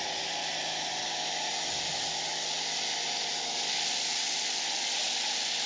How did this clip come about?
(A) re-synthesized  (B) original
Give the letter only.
B